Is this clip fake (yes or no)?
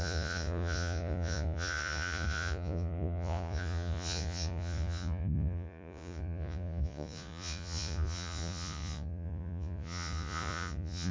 yes